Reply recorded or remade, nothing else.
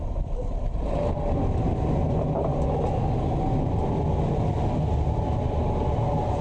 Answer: recorded